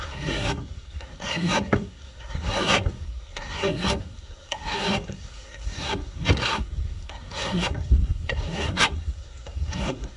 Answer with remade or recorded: remade